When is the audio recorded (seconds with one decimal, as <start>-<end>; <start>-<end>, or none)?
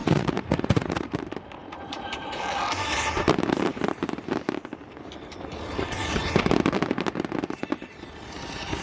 1.1-1.6; 2.4-8.8